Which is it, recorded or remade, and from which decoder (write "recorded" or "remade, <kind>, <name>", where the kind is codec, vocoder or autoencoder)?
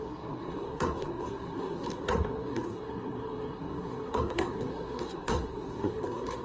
remade, codec, SNAC